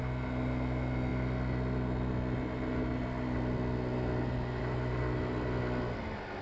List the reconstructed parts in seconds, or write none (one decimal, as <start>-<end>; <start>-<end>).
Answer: none